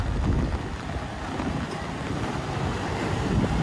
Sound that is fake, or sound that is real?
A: real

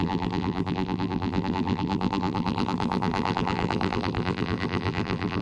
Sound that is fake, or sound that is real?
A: fake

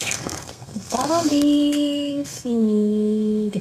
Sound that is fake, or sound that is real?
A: fake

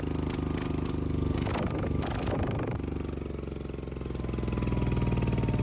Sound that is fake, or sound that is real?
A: real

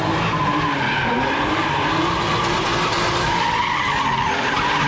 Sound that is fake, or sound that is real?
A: real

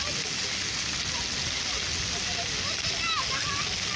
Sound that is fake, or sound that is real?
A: real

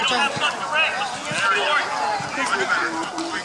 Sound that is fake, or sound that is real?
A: real